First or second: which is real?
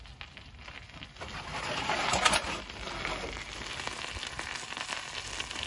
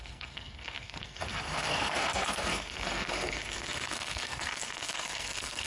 first